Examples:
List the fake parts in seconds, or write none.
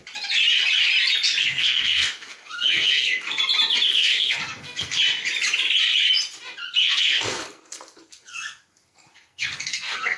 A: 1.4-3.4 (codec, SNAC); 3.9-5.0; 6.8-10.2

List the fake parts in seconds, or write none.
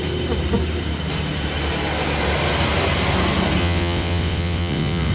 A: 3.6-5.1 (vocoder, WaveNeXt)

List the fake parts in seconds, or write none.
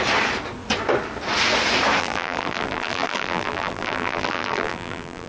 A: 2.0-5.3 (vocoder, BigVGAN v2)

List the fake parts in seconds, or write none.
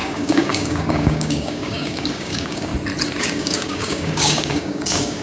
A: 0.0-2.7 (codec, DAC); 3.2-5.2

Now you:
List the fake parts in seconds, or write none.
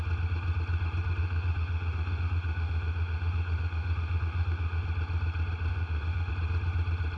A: 1.2-4.8 (autoencoder, DAC-VAE); 5.7-6.3